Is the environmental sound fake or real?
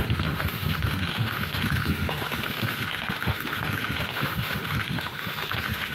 fake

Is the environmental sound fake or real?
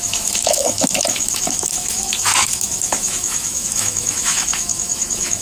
fake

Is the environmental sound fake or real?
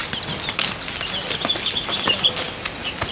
real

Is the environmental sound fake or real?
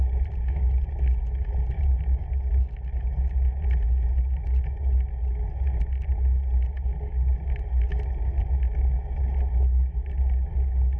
real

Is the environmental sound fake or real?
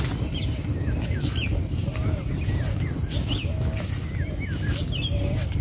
real